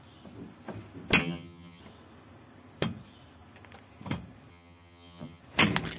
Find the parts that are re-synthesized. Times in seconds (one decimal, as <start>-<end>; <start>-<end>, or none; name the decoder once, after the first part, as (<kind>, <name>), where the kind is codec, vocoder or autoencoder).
1.2-1.8 (vocoder, HiFi-GAN); 4.5-5.4